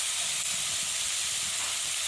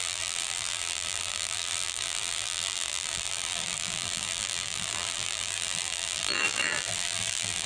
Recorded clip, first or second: first